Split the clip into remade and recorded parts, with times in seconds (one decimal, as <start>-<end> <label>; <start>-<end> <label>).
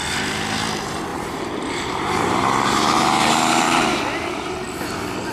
0.0-1.1 recorded; 1.1-4.0 remade; 4.0-5.3 recorded